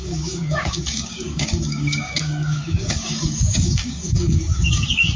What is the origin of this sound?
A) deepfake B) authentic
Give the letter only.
A